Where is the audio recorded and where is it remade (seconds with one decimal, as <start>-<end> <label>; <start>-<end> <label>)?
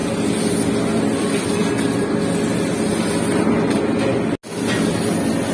0.0-5.5 recorded